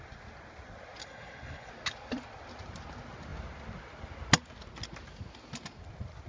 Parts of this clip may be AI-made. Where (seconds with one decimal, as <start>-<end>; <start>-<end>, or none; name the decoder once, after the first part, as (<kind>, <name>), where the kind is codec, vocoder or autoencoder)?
1.0-1.7 (codec, HILCodec)